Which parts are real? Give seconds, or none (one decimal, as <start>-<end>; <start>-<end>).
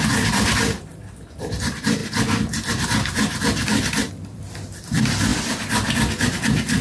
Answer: 0.9-1.5; 2.0-4.1; 5.3-6.1